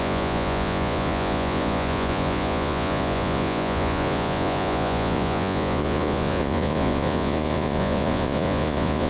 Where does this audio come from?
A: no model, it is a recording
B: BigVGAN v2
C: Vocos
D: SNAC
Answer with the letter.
C